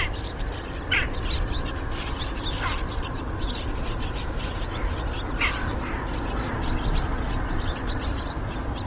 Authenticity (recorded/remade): recorded